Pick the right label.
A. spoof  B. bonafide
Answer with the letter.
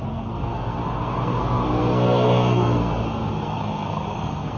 A